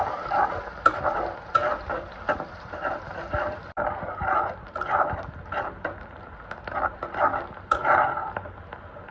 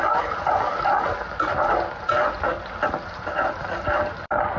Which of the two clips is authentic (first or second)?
second